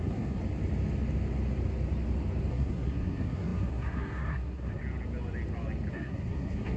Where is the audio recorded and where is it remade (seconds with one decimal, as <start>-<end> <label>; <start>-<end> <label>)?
0.0-0.4 remade; 0.4-2.5 recorded; 2.5-4.8 remade; 4.8-5.9 recorded; 5.9-6.8 remade

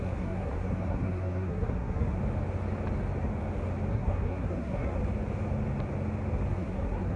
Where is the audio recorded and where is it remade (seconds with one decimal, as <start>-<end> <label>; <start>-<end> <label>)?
0.0-2.2 remade; 2.2-3.9 recorded; 3.9-5.0 remade; 5.0-6.5 recorded; 6.5-7.2 remade